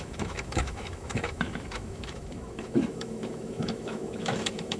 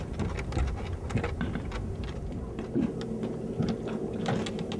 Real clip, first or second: second